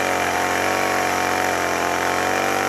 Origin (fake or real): real